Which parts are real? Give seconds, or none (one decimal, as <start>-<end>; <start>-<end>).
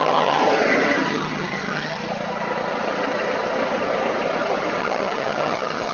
0.4-1.1; 2.0-4.8